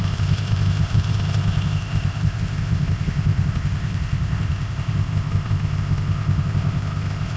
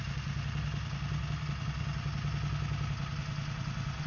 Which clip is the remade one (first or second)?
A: first